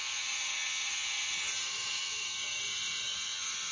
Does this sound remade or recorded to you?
remade